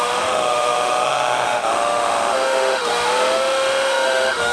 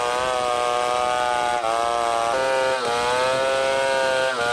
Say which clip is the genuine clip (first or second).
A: second